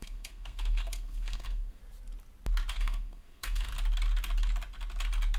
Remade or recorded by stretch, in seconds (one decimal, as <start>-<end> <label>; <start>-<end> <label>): 0.0-1.8 remade; 1.8-2.7 recorded; 2.7-3.7 remade; 3.7-5.4 recorded